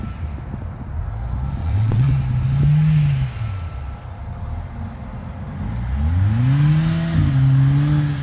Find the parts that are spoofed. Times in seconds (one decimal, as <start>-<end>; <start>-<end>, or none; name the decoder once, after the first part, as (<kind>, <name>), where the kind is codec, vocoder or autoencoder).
1.6-2.1 (vocoder, WaveNeXt)